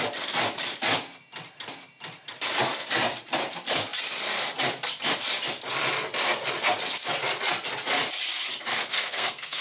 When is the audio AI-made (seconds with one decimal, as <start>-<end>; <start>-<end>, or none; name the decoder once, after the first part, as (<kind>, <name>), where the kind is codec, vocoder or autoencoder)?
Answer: 8.7-9.6 (codec, SNAC)